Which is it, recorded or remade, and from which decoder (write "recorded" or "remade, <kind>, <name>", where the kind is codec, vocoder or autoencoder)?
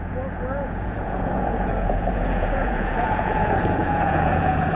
remade, vocoder, Vocos